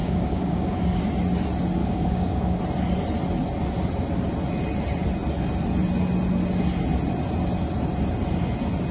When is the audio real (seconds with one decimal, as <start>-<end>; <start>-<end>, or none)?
1.0-1.8; 2.6-8.9